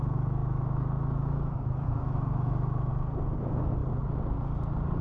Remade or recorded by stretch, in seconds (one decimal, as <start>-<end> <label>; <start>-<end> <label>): 0.0-2.9 remade; 2.9-3.4 recorded; 3.4-3.8 remade; 3.8-5.0 recorded